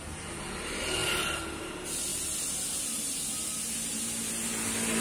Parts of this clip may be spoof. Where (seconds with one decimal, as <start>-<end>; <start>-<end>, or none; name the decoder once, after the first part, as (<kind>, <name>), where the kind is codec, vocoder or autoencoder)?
none